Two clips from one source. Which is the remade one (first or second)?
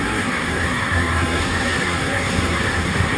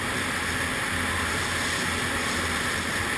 first